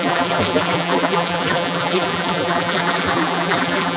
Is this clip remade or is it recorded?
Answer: remade